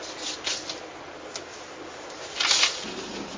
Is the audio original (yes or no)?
yes